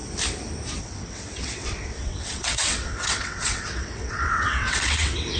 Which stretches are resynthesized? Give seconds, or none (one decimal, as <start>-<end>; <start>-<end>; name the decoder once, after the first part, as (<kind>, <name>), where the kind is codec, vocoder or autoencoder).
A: 0.8-5.4 (vocoder, WaveNeXt)